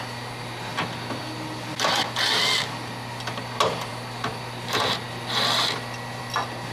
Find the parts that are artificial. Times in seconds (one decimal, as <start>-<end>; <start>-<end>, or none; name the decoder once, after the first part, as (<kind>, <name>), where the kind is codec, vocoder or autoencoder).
none